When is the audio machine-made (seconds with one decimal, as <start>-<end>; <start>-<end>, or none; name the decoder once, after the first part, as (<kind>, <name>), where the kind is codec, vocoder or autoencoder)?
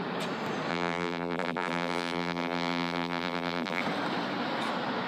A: 0.7-3.8 (vocoder, BigVGAN v2)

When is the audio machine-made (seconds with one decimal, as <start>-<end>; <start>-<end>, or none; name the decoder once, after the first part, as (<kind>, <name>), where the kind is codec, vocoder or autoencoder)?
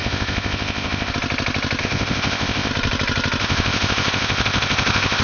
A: 0.0-1.1 (codec, ZipCodec); 1.8-2.7; 3.4-5.2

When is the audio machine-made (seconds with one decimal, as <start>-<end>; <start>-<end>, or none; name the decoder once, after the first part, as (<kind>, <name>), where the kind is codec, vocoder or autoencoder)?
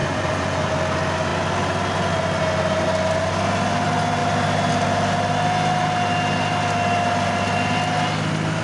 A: 0.0-0.7 (vocoder, Vocos)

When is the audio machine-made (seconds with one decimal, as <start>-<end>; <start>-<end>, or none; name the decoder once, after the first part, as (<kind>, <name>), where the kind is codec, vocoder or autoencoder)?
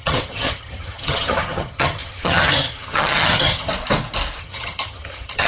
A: 0.0-3.7 (vocoder, HiFi-GAN); 4.4-5.5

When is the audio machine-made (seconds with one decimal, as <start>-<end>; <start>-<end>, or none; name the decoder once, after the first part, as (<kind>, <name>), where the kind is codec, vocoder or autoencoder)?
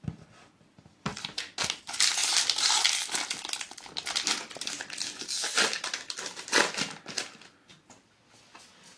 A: none